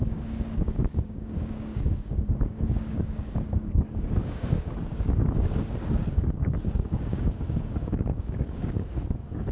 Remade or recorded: remade